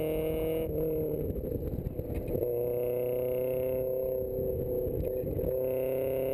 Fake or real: real